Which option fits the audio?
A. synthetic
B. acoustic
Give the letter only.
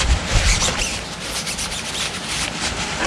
A